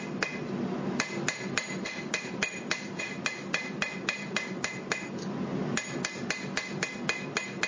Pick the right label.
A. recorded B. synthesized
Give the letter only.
A